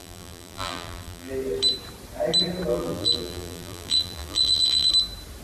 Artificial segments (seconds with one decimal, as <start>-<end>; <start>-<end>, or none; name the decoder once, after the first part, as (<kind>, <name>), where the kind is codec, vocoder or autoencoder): 0.0-1.3 (vocoder, BigVGAN v2); 2.7-4.9